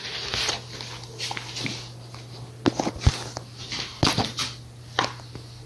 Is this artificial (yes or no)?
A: no